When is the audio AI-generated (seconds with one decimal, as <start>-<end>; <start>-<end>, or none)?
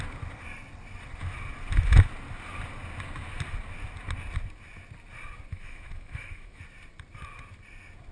5.5-6.6